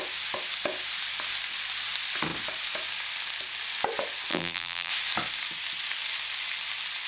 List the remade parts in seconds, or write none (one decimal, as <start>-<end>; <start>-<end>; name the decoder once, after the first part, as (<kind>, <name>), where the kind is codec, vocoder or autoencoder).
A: 4.3-4.9 (vocoder, BigVGAN v2)

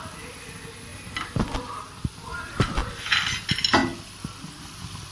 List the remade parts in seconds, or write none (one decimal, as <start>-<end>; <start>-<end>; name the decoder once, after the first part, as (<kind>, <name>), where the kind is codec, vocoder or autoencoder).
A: 0.9-1.5 (vocoder, BigVGAN v2)

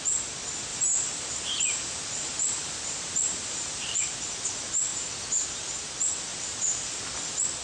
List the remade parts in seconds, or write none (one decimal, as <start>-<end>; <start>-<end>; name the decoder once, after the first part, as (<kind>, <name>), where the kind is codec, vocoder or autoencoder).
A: 0.7-4.0 (vocoder, BigVGAN v2); 6.3-7.0

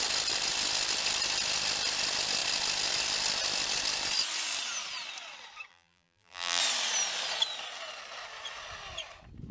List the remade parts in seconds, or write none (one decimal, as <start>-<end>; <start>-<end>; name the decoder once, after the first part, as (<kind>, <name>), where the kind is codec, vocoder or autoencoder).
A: 5.7-6.6 (vocoder, BigVGAN v2)

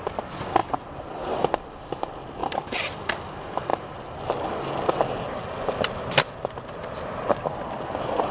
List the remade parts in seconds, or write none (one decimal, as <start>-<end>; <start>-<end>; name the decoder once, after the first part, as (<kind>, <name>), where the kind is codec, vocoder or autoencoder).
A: 0.6-1.9 (vocoder, BigVGAN v2); 2.4-3.3

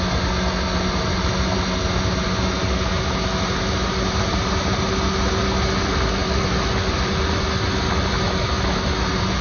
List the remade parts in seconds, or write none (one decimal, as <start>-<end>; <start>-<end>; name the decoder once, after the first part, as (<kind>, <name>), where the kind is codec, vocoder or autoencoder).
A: 6.2-7.4 (vocoder, BigVGAN v2)